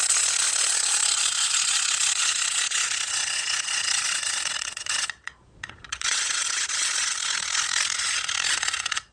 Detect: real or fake fake